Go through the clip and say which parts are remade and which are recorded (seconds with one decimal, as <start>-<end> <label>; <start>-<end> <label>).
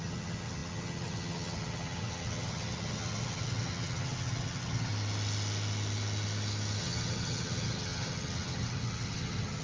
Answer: 0.0-4.9 remade; 4.9-6.8 recorded; 6.8-9.6 remade